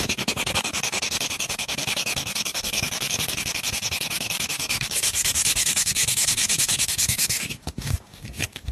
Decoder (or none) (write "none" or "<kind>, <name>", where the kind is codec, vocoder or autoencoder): codec, DAC